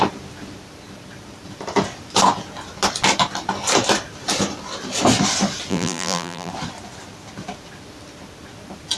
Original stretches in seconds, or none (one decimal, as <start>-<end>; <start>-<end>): 0.0-5.7; 6.5-9.0